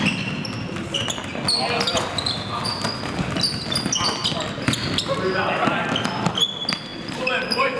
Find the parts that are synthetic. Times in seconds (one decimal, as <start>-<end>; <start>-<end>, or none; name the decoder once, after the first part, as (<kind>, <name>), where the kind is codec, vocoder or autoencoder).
none